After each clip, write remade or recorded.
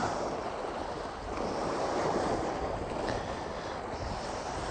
recorded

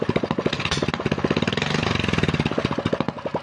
recorded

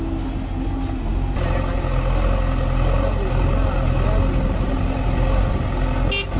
recorded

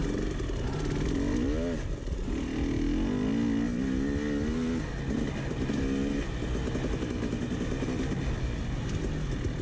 recorded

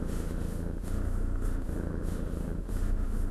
remade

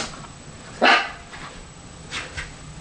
recorded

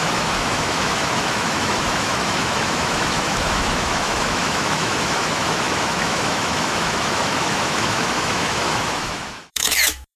remade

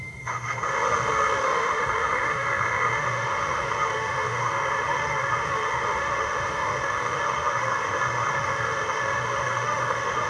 remade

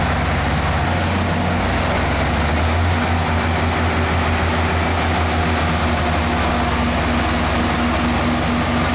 recorded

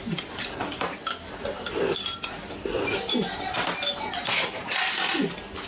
recorded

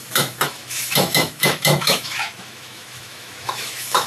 remade